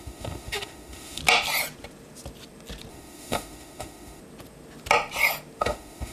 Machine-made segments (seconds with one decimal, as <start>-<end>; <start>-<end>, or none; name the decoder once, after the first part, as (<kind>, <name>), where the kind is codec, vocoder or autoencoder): 0.0-1.2 (autoencoder, DAC-VAE); 2.9-4.2; 5.6-6.1